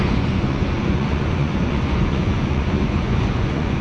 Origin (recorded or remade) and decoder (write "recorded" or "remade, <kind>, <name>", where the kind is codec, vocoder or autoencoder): remade, vocoder, Vocos